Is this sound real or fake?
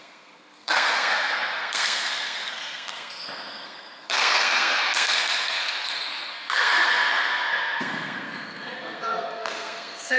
fake